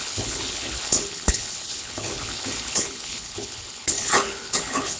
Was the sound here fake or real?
fake